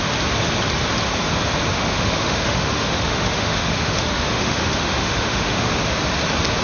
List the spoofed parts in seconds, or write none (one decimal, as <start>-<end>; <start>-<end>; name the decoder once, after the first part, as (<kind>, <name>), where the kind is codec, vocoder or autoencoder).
1.7-5.7 (autoencoder, DAC-VAE)